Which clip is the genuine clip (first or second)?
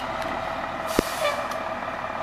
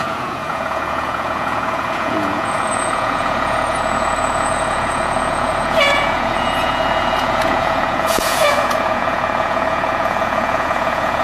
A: first